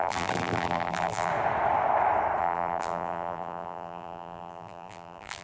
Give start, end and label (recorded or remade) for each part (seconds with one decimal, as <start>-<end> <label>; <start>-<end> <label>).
0.0-1.3 remade; 1.3-2.4 recorded; 2.4-5.4 remade